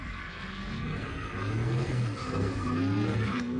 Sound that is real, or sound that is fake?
fake